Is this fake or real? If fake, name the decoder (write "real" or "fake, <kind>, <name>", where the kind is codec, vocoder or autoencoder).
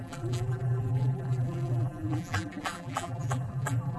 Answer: fake, vocoder, BigVGAN v2